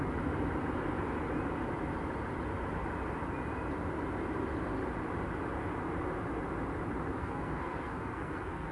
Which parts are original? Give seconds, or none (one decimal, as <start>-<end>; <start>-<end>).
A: 0.0-7.2